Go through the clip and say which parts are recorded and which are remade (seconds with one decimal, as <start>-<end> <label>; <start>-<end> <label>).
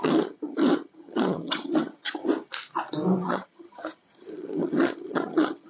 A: 0.0-2.2 remade; 2.2-3.2 recorded; 3.2-5.7 remade